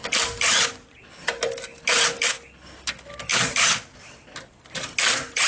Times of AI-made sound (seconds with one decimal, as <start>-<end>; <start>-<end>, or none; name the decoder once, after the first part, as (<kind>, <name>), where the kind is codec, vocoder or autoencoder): 3.3-3.8 (vocoder, BigVGAN v2)